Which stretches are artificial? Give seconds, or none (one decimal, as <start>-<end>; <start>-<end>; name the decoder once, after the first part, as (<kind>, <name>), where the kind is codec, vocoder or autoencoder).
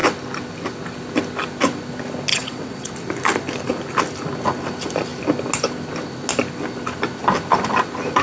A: 2.3-2.9 (vocoder, WaveNeXt)